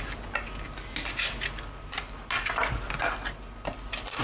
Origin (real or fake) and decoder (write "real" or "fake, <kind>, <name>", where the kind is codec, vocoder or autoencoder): real